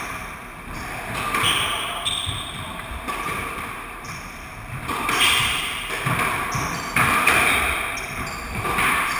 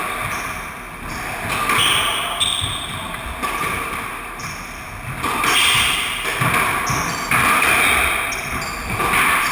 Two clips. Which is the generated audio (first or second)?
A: first